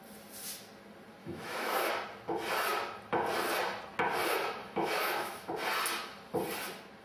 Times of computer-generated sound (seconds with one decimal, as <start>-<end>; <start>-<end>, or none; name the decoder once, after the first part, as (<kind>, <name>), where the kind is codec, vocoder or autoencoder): 1.2-1.9 (autoencoder, DAC-VAE); 4.6-5.5